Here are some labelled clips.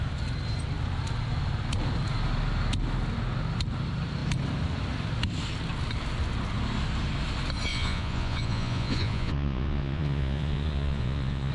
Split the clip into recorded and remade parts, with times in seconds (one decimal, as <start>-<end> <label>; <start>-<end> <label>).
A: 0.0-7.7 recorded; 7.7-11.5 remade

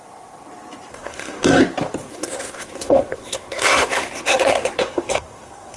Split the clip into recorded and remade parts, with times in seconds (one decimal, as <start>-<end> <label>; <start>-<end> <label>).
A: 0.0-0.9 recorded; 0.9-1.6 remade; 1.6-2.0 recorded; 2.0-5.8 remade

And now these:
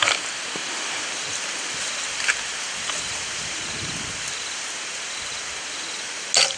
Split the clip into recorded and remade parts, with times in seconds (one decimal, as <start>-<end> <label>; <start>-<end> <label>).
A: 0.0-6.6 recorded

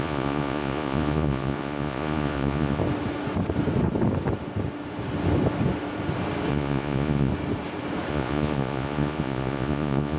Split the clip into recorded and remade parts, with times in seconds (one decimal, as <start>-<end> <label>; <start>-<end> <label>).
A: 0.0-2.8 remade; 2.8-6.5 recorded; 6.5-7.3 remade; 7.3-8.1 recorded; 8.1-10.2 remade